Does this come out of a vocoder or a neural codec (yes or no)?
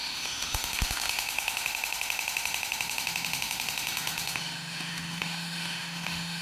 yes